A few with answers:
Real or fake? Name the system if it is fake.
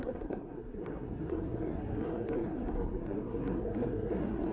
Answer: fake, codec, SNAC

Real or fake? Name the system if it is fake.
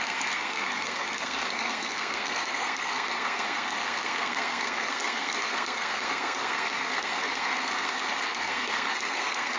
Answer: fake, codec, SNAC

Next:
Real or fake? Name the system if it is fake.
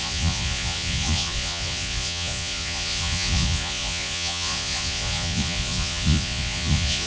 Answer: fake, vocoder, Vocos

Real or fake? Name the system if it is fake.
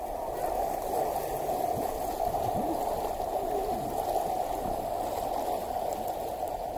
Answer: real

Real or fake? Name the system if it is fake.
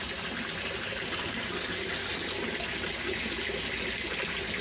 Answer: real